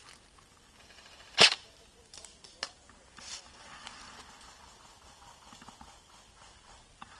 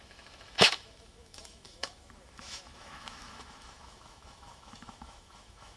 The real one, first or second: first